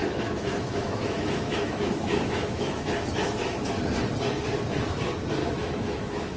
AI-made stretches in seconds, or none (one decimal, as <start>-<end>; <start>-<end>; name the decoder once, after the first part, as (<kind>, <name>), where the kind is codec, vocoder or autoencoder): 0.0-3.8 (autoencoder, DAC-VAE); 5.4-6.4